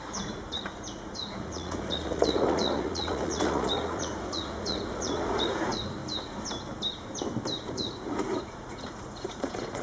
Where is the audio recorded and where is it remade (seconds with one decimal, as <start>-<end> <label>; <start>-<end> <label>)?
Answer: 0.0-6.0 remade; 6.0-7.7 recorded; 7.7-9.8 remade